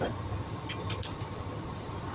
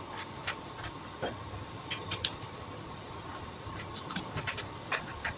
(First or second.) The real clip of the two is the first